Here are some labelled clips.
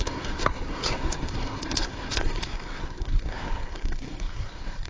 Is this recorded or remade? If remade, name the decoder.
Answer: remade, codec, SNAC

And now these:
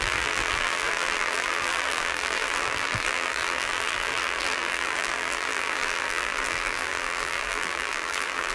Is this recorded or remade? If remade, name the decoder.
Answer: remade, vocoder, BigVGAN v2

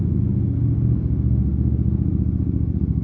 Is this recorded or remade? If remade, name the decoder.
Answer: recorded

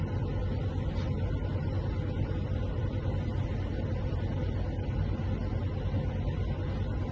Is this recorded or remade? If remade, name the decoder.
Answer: recorded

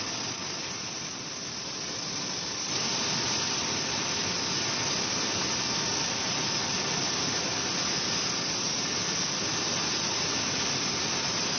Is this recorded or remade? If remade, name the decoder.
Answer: recorded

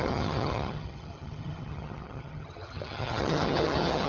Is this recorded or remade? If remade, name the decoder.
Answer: remade, vocoder, HiFi-GAN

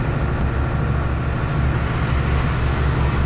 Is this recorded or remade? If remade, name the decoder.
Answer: recorded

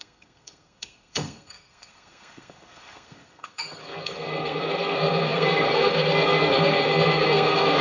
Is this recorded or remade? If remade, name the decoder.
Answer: remade, codec, SNAC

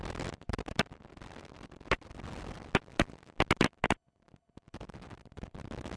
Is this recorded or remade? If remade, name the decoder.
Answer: recorded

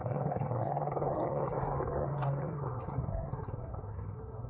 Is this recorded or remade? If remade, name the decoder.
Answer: remade, codec, SNAC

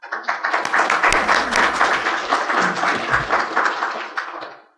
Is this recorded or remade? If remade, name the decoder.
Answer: recorded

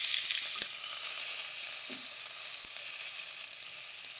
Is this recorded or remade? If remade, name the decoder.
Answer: recorded